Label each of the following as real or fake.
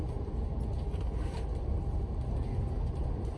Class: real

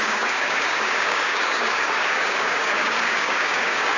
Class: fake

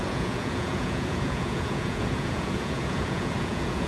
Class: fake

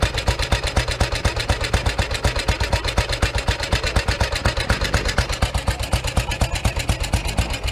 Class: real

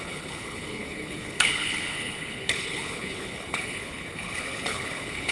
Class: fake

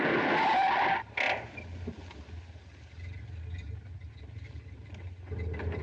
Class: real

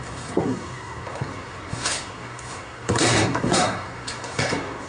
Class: fake